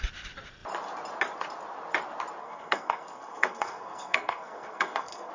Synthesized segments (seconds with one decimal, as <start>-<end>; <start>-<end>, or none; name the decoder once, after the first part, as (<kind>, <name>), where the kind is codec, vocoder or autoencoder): 2.4-5.3 (codec, SNAC)